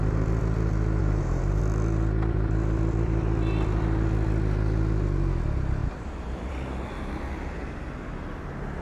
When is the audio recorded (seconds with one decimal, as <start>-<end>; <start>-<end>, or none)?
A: 0.0-1.0; 1.6-5.8; 6.5-8.8